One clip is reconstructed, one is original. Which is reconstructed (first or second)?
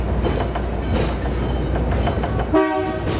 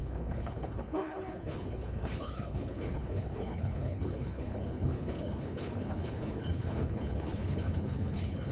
second